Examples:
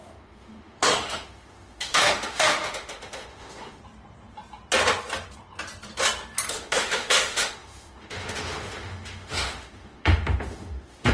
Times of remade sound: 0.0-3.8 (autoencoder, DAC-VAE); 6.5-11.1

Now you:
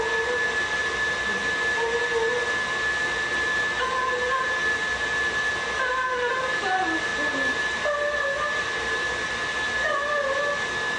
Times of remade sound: none